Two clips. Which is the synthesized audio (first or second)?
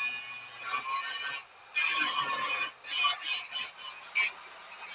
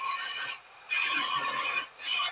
second